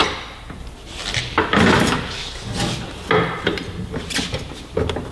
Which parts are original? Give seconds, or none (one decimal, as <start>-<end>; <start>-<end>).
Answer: 0.0-5.1